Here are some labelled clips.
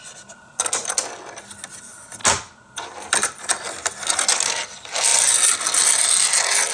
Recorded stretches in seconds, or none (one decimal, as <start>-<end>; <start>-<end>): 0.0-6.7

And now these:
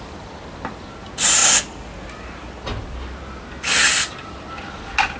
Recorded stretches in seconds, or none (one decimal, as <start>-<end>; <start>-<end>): 0.0-5.2

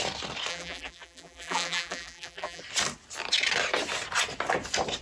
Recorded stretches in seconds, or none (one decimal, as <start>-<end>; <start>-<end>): 0.0-0.5; 2.6-5.0

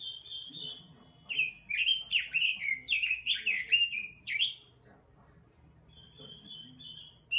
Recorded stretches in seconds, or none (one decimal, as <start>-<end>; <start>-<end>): 0.0-1.9; 4.4-7.4